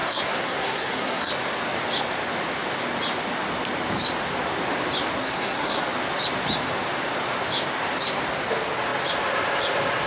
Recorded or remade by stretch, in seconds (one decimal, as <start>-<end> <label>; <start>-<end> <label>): 0.0-1.3 remade; 1.3-5.2 recorded; 5.2-5.8 remade; 5.8-10.1 recorded